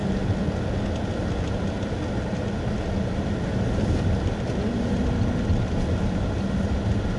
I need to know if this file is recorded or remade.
recorded